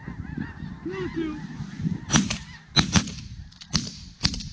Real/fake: real